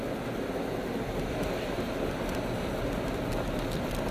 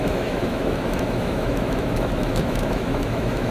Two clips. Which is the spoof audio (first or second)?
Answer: second